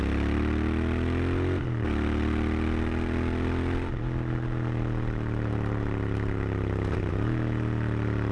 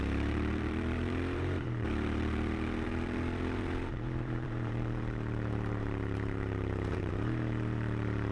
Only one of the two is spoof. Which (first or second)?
second